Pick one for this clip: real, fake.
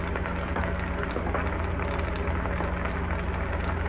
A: real